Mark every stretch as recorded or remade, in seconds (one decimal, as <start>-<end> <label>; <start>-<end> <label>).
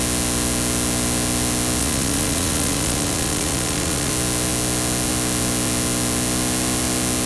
0.0-1.8 recorded; 1.8-4.1 remade; 4.1-7.3 recorded